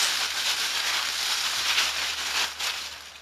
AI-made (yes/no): no